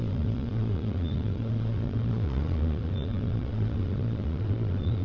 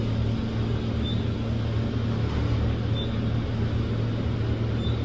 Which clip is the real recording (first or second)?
second